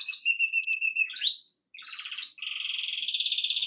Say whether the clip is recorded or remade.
recorded